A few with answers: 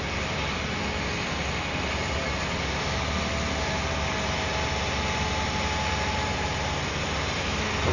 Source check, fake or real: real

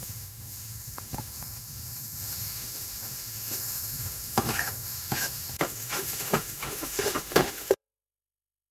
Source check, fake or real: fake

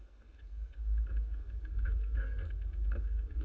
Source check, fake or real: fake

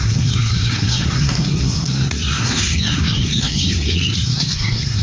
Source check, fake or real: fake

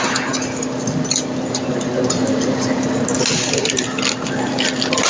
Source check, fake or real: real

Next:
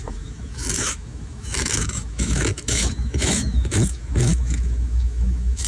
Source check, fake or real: fake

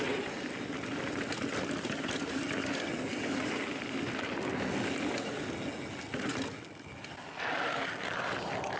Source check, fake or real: real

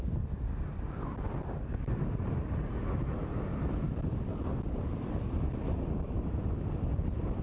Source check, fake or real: real